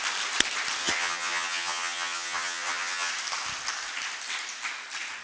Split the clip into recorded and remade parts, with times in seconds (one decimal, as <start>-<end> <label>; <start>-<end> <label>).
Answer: 0.0-0.8 recorded; 0.8-3.1 remade; 3.1-5.2 recorded